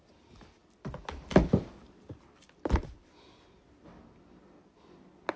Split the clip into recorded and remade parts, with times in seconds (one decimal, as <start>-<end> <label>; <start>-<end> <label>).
0.0-5.4 recorded